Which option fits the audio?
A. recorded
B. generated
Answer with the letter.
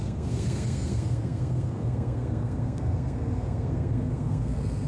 B